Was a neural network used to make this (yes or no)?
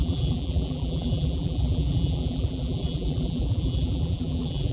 yes